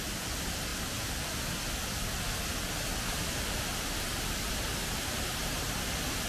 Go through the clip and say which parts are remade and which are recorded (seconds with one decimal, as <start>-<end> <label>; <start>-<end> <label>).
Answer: 0.0-6.3 recorded